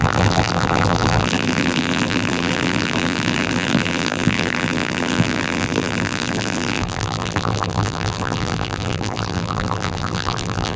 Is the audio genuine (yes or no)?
no